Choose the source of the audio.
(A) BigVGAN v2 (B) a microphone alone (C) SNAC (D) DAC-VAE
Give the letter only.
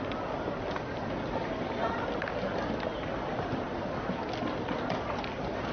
B